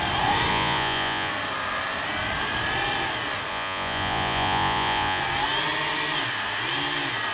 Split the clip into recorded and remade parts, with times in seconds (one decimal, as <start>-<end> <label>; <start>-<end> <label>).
0.0-0.5 recorded; 0.5-1.3 remade; 1.3-3.5 recorded; 3.5-5.2 remade; 5.2-7.3 recorded